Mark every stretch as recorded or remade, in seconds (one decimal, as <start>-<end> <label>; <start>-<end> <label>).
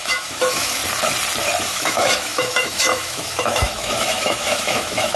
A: 0.0-0.8 remade; 0.8-1.6 recorded; 1.6-5.2 remade